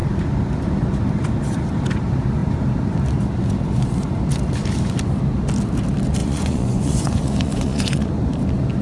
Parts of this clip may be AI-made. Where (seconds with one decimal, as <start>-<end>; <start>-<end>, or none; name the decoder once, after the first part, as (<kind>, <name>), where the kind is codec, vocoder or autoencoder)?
6.2-8.1 (vocoder, Vocos)